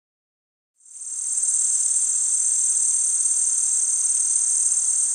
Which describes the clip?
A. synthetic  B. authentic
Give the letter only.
B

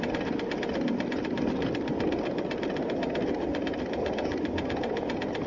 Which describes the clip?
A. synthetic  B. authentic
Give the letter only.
B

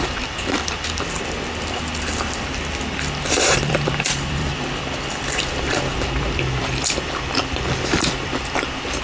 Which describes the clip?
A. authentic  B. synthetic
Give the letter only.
B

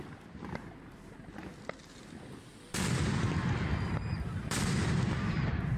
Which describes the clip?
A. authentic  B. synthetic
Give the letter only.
B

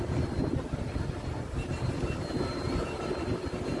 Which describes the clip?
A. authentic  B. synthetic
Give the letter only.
A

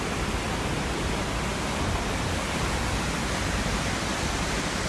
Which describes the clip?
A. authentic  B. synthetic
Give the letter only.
A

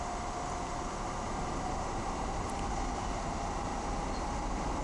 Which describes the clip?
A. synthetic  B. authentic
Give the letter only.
A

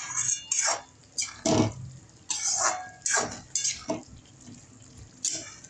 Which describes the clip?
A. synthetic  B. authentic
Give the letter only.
B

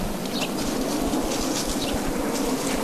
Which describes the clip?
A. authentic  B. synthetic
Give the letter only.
B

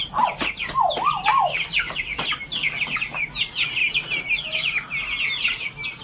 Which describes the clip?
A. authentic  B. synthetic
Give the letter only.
A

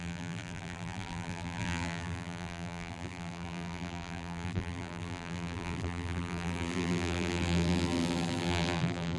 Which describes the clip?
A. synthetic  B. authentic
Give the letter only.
A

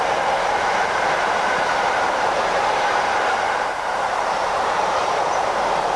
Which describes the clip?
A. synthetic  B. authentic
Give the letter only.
A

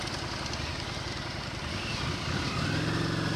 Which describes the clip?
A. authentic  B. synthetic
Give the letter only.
A